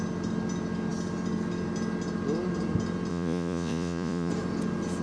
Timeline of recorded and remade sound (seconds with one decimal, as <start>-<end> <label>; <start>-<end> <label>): 0.0-3.1 recorded; 3.1-4.3 remade; 4.3-5.0 recorded